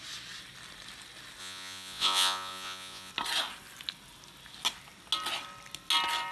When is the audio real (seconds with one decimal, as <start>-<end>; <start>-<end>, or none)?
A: 0.0-1.4; 3.1-6.3